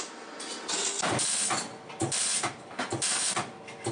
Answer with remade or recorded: remade